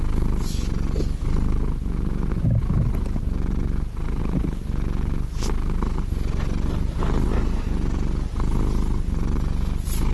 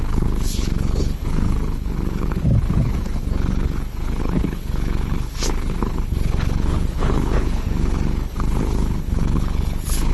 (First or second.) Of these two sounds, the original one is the first